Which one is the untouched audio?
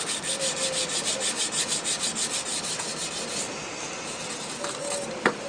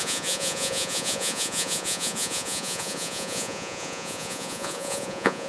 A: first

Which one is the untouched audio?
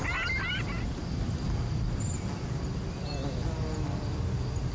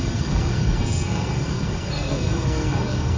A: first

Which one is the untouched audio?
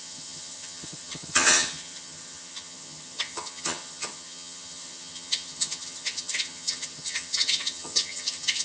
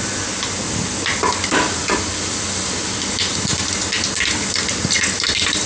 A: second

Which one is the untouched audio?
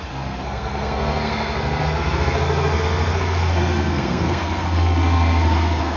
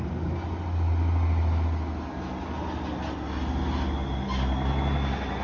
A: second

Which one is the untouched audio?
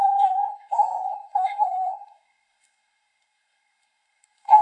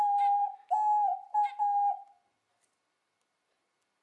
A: second